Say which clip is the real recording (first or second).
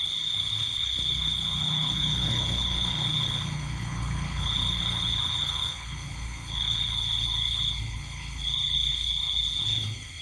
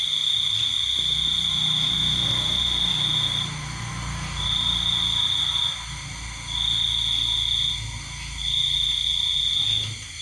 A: second